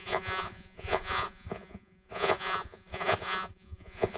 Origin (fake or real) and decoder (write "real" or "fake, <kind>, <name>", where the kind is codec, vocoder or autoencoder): fake, vocoder, Vocos